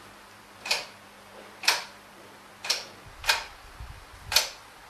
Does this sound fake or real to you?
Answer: fake